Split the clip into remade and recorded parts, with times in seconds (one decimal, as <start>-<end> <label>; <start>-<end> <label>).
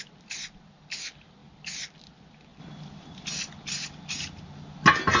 0.0-5.2 recorded